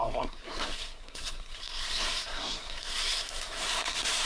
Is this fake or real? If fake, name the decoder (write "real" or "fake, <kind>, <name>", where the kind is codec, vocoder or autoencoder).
fake, codec, SNAC